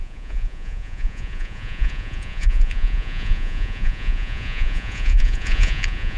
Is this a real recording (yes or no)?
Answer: no